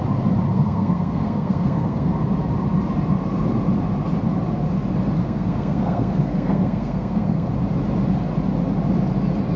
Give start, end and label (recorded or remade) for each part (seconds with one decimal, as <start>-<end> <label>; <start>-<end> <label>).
0.0-0.5 recorded; 0.5-2.1 remade; 2.1-5.2 recorded; 5.2-7.5 remade; 7.5-9.6 recorded